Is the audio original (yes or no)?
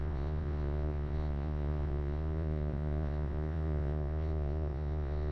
no